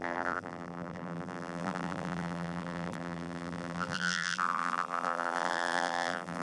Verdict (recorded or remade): remade